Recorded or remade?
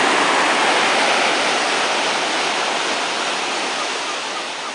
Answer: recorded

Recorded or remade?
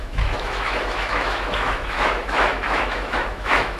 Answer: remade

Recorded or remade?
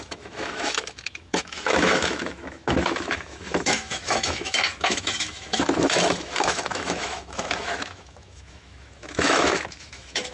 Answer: remade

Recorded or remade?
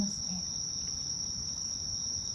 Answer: recorded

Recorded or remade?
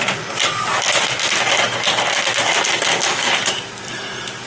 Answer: recorded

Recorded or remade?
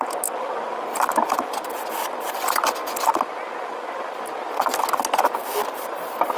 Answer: recorded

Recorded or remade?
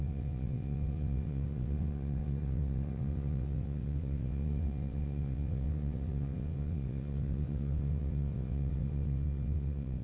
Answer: remade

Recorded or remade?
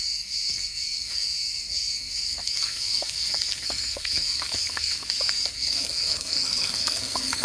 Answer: remade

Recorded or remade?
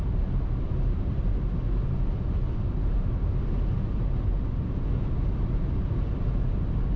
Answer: recorded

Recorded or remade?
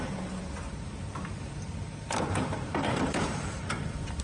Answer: remade